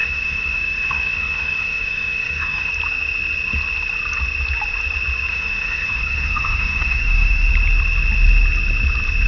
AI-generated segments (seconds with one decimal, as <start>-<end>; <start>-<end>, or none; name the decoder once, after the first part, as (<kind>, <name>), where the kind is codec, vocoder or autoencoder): 0.0-2.7 (autoencoder, DAC-VAE); 5.3-7.5